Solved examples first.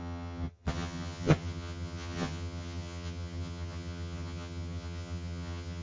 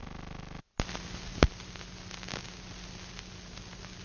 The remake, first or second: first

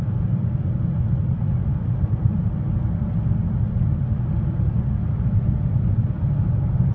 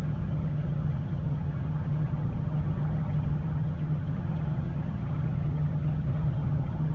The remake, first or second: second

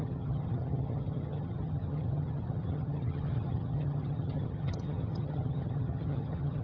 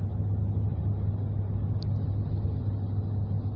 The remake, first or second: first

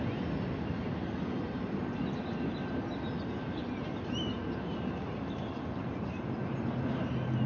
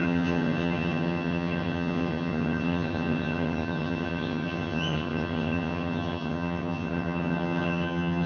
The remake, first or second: second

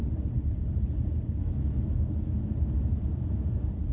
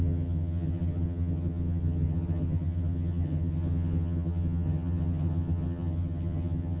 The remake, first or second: second